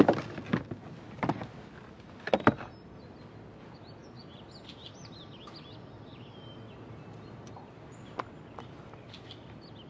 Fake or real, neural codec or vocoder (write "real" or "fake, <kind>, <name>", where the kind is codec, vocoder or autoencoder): real